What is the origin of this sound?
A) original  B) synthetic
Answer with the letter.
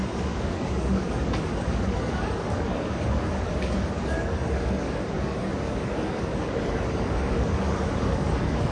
B